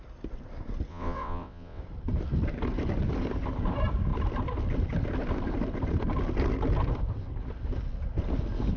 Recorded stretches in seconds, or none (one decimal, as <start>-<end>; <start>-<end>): 0.0-0.9; 1.8-8.8